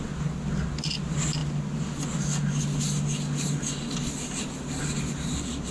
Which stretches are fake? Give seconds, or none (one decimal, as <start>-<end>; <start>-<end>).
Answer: none